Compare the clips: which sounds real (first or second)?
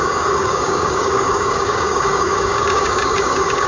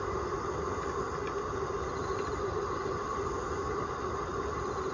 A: second